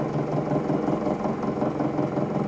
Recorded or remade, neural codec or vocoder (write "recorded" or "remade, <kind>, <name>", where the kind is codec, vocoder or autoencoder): remade, vocoder, BigVGAN v2